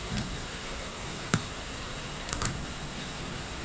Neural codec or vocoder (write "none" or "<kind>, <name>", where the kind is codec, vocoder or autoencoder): codec, SNAC